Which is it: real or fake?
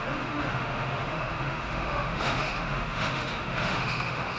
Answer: fake